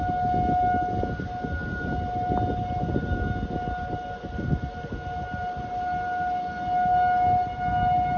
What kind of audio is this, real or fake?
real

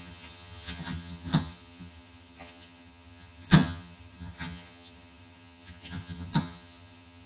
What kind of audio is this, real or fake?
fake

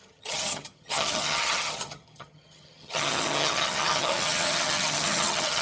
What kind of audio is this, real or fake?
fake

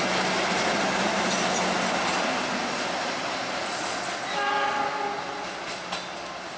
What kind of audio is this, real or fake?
real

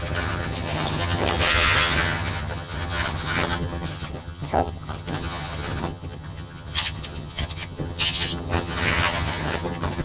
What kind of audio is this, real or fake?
fake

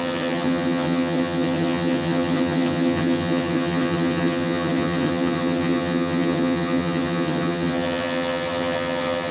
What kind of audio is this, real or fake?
fake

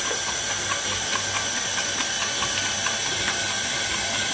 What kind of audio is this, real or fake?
real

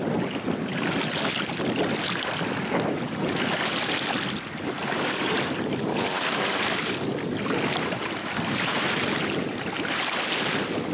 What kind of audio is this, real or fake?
real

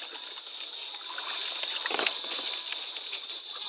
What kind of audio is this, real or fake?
real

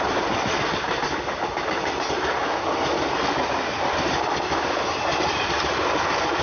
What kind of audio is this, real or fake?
real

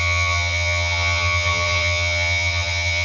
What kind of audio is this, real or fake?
fake